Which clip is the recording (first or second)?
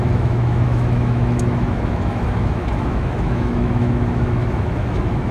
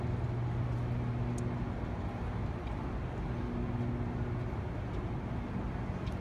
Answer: second